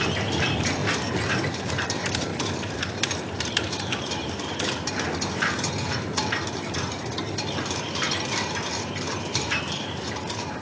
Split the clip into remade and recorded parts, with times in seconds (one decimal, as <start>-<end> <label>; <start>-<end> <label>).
0.0-10.6 remade